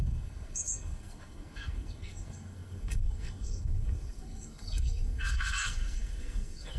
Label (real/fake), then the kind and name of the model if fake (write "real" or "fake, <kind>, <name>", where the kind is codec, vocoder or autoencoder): fake, codec, SNAC